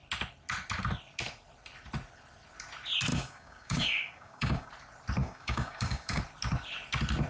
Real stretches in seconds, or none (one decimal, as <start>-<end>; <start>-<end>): 0.0-3.1; 4.7-5.2; 6.2-7.3

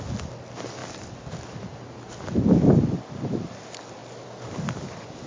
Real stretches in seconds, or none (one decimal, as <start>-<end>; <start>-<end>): 0.0-5.3

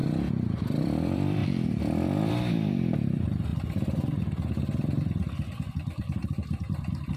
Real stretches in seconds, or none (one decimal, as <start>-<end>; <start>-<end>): 0.0-0.8; 1.4-2.3; 3.5-5.7

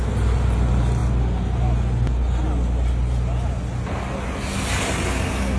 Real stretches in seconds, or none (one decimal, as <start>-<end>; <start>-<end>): 0.0-5.6

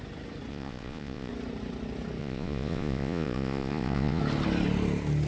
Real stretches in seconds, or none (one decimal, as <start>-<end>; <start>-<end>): 0.0-0.5; 1.3-2.2; 4.2-5.3

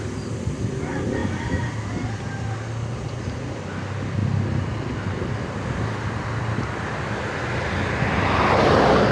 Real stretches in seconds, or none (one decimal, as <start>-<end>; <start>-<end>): 0.0-4.2; 6.7-9.1

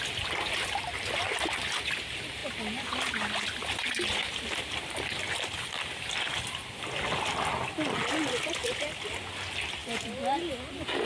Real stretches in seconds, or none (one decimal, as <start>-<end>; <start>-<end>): 0.0-8.6; 9.3-9.8; 10.5-11.1